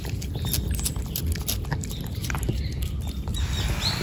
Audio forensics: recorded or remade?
recorded